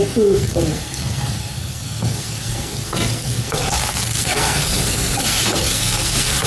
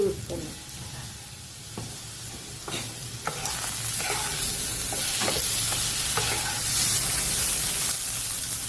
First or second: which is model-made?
first